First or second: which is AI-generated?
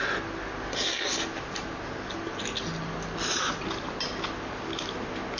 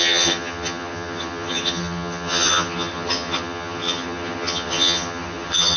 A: second